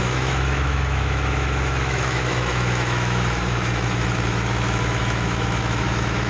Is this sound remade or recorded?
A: remade